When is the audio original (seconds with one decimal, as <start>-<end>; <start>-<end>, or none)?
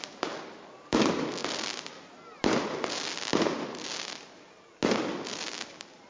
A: 0.0-6.1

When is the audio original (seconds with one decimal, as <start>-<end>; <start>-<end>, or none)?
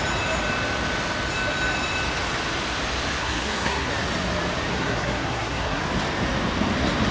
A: 0.0-3.2; 3.9-4.7; 5.8-7.1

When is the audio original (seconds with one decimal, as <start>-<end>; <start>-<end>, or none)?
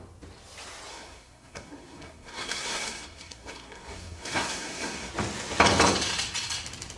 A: 0.0-0.9; 5.1-7.0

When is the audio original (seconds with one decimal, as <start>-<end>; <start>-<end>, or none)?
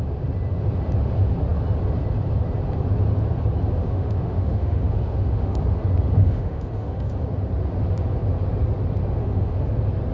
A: 0.0-3.8; 5.6-6.2; 7.1-9.2; 9.7-10.1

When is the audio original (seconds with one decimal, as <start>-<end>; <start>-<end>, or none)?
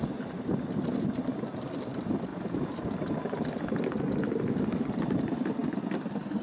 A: 0.0-6.4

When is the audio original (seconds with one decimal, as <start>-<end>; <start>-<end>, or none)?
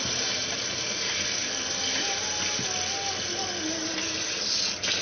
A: 0.0-5.0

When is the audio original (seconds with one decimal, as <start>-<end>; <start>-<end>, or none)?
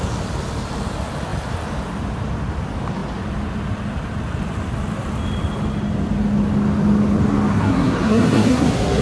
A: 0.0-7.5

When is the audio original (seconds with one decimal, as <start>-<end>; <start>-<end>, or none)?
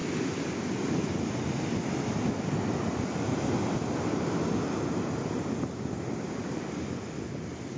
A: 0.0-7.8